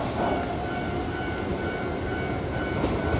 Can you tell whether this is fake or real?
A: real